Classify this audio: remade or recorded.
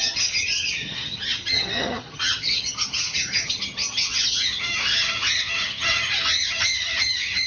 remade